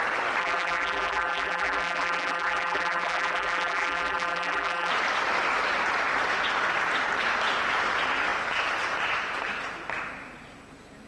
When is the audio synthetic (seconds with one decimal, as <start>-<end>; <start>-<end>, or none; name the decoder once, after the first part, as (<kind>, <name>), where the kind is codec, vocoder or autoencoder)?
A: 0.4-4.9 (vocoder, BigVGAN v2)